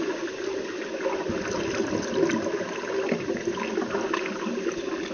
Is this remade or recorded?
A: recorded